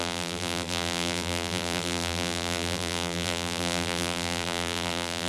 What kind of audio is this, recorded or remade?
remade